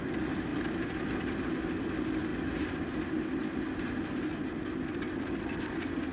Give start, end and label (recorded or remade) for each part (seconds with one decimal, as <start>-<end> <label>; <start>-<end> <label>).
0.0-6.1 recorded